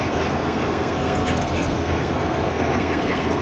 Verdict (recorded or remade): remade